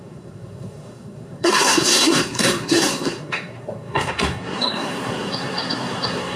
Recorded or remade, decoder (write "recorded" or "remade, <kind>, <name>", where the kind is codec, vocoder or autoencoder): remade, codec, SNAC